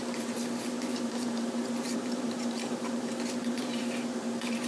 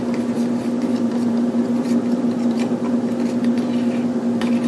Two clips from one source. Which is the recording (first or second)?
second